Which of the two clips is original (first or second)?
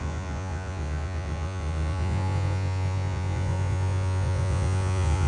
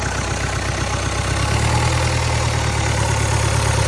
second